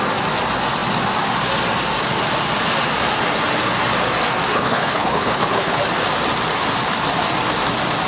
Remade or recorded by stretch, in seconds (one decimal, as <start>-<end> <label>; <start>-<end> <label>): 0.0-4.5 recorded; 4.5-5.8 remade; 5.8-8.1 recorded